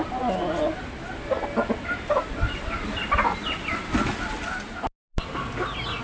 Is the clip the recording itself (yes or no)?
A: yes